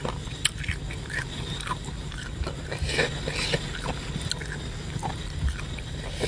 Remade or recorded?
recorded